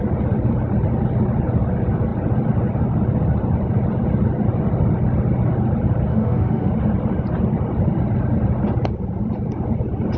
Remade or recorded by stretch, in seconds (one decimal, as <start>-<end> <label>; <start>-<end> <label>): 0.0-6.1 recorded; 6.1-6.7 remade; 6.7-10.2 recorded